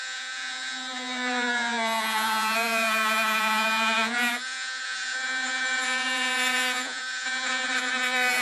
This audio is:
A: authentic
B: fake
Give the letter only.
B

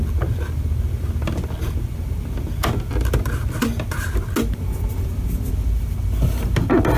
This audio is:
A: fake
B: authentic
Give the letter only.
B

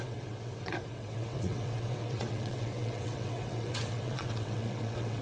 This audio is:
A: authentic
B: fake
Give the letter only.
B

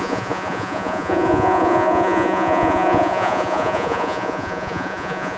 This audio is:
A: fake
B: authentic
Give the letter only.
A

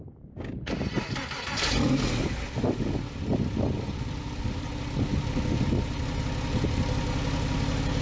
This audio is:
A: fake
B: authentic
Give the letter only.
B